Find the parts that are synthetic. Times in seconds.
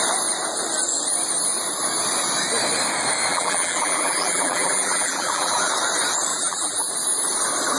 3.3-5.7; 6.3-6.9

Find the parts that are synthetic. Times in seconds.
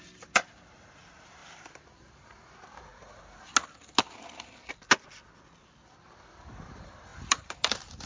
0.0-1.4; 2.0-2.9; 6.5-8.1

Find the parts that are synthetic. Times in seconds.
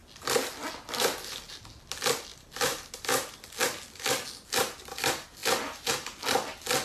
2.3-3.3; 5.4-5.9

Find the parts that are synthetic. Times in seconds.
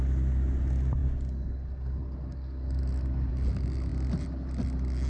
none